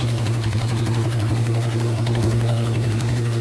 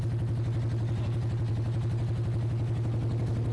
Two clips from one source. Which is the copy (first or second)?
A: first